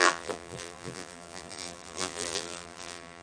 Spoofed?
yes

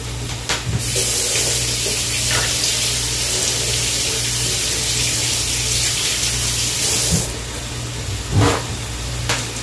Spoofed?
no